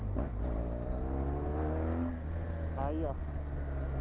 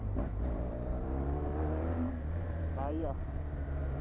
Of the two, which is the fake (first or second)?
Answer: second